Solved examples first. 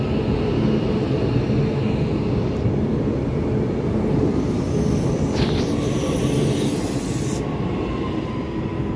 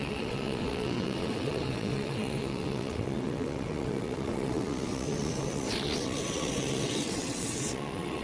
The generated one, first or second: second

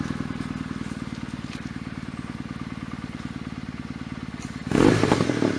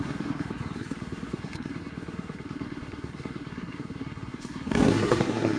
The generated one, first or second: second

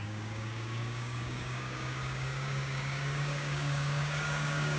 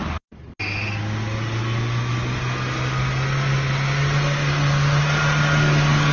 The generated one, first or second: first